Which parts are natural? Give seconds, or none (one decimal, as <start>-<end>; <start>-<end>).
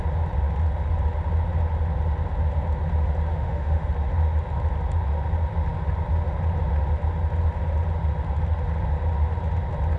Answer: 0.0-3.3; 3.9-10.0